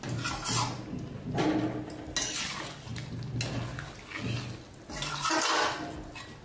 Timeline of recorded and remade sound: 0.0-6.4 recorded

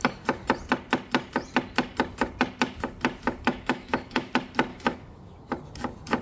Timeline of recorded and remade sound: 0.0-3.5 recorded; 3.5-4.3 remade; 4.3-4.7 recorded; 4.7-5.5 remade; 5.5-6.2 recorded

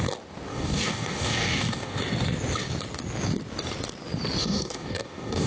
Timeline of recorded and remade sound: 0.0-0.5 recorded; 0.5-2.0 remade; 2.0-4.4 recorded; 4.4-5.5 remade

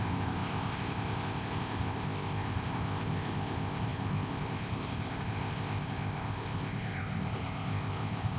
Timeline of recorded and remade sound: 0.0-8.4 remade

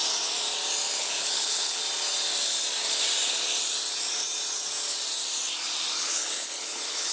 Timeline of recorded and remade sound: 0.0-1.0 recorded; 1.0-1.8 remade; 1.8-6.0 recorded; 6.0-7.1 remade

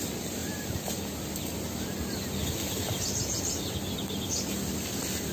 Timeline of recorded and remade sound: 0.0-0.4 recorded; 0.4-1.0 remade; 1.0-2.4 recorded; 2.4-3.0 remade; 3.0-5.3 recorded

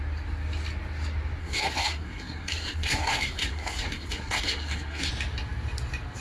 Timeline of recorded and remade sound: 0.0-1.4 recorded; 1.4-5.1 remade; 5.1-6.2 recorded